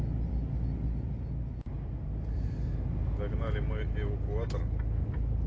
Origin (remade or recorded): recorded